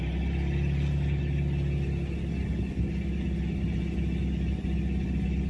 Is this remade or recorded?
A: recorded